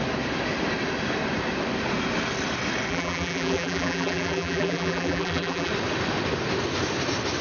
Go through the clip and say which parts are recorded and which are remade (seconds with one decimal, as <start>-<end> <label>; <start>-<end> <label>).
0.0-2.9 recorded; 2.9-5.7 remade; 5.7-7.4 recorded